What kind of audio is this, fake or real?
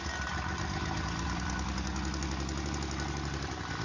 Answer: real